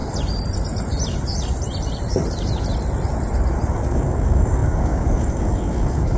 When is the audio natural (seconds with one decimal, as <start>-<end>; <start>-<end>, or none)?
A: 0.0-3.7